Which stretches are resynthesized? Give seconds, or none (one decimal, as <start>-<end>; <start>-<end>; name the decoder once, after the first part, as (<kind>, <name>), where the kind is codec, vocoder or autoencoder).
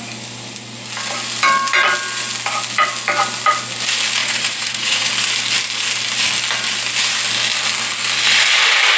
4.2-5.1 (vocoder, Vocos)